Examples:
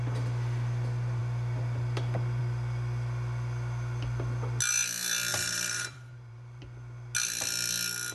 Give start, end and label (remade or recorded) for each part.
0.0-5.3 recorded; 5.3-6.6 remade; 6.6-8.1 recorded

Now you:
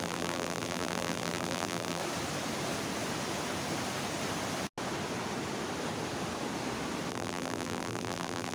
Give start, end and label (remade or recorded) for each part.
0.0-2.0 remade; 2.0-7.1 recorded; 7.1-8.5 remade

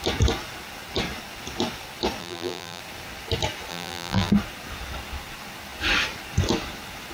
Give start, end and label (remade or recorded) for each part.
0.0-2.2 recorded; 2.2-2.8 remade; 2.8-3.7 recorded; 3.7-4.3 remade; 4.3-7.1 recorded

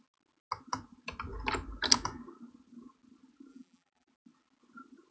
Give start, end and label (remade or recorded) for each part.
0.0-3.5 recorded; 3.5-4.1 remade; 4.1-5.1 recorded

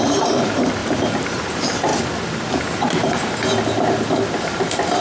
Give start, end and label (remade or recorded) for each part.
0.0-1.9 remade; 1.9-5.0 recorded

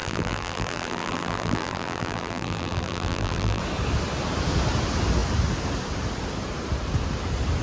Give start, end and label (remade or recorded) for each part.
0.0-3.6 remade; 3.6-7.6 recorded